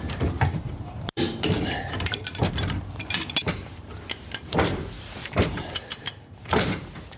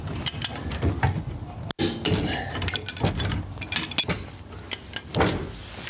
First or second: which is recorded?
second